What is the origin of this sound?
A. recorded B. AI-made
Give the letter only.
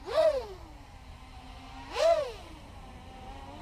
A